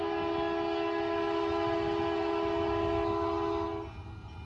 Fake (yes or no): no